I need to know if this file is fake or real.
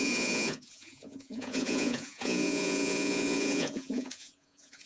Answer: fake